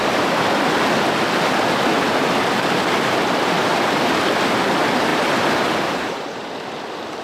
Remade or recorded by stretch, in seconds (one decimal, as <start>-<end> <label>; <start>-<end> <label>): 0.0-5.1 recorded; 5.1-6.5 remade; 6.5-7.2 recorded